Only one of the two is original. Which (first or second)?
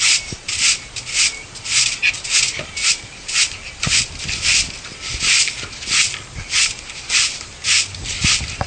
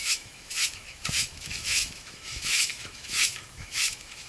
first